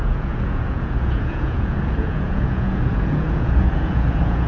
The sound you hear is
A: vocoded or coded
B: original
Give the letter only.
A